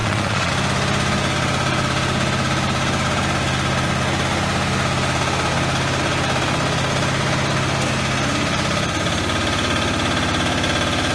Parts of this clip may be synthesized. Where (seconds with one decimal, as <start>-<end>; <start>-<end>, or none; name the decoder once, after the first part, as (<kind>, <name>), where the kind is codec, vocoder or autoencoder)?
0.0-0.5 (vocoder, Vocos)